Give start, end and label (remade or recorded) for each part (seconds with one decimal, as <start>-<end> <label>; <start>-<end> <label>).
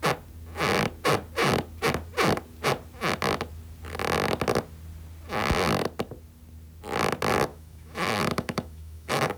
0.0-7.5 recorded; 7.5-9.4 remade